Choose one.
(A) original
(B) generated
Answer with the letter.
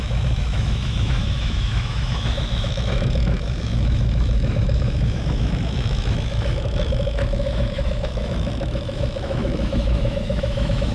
B